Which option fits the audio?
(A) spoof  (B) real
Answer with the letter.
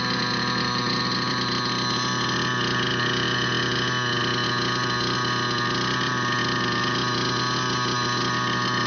B